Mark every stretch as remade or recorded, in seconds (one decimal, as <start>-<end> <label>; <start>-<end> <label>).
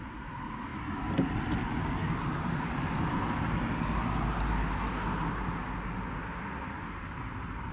0.0-7.7 recorded